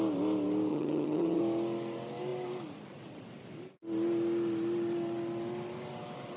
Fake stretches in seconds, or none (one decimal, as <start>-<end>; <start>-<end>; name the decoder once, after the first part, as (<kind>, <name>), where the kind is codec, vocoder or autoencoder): 0.7-1.4 (vocoder, HiFi-GAN)